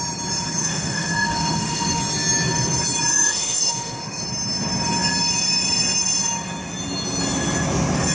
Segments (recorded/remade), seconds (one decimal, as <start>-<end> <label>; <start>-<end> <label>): 0.0-0.6 recorded; 0.6-2.0 remade; 2.0-3.1 recorded; 3.1-4.2 remade; 4.2-8.1 recorded